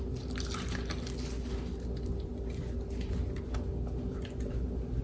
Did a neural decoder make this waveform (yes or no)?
no